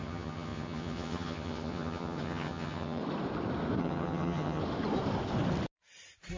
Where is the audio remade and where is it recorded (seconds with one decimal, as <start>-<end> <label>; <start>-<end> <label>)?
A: 0.0-3.0 remade; 3.0-3.8 recorded; 3.8-4.6 remade; 4.6-6.4 recorded